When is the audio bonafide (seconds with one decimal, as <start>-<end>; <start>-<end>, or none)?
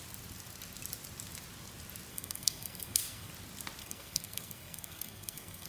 0.0-2.1; 3.3-3.8